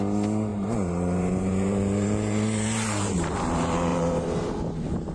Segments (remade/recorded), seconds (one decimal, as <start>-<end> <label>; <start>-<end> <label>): 0.0-0.5 recorded; 0.5-3.4 remade; 3.4-3.9 recorded; 3.9-4.5 remade; 4.5-5.1 recorded